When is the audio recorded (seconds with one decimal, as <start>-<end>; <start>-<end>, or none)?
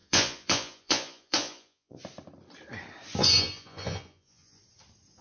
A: 2.0-3.2; 4.6-5.2